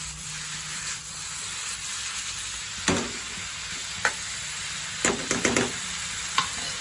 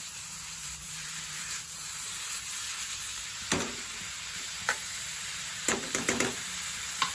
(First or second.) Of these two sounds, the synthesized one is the second